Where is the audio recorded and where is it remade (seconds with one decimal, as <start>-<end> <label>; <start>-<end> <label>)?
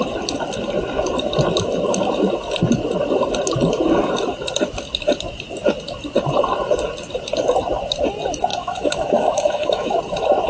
0.0-8.5 recorded; 8.5-10.0 remade; 10.0-10.5 recorded